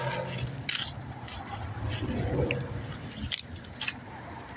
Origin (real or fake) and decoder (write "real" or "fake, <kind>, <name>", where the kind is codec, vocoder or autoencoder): real